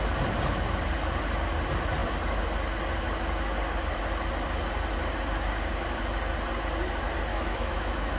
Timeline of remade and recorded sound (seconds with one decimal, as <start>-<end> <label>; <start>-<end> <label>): 0.0-7.3 recorded; 7.3-8.2 remade